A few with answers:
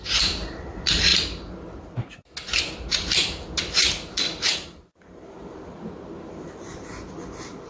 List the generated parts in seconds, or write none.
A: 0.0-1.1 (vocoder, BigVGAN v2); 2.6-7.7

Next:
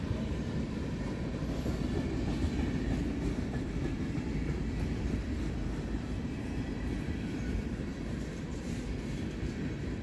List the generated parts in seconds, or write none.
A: 0.0-1.4 (vocoder, BigVGAN v2); 3.6-10.0